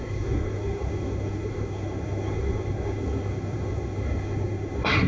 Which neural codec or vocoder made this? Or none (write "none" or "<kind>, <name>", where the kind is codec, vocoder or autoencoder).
codec, SNAC